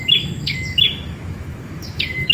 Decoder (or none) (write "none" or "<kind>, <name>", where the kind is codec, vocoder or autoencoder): autoencoder, DAC-VAE